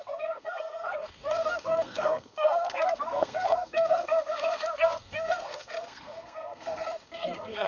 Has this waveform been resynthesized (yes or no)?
yes